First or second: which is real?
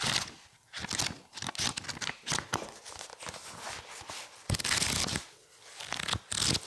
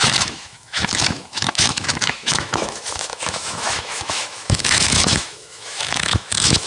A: first